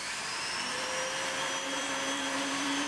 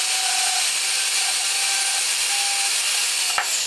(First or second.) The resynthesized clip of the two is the first